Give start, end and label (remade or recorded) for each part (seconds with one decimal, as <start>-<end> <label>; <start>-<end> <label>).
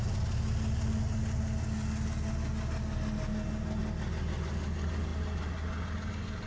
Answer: 0.0-6.5 recorded